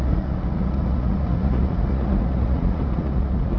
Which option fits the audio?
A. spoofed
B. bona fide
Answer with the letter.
A